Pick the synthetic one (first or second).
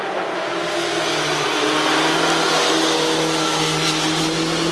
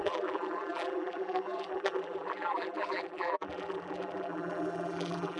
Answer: second